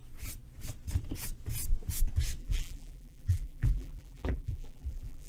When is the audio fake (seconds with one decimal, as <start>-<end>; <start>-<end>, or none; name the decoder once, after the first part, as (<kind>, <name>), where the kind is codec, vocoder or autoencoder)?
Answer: 2.4-5.3 (vocoder, BigVGAN v2)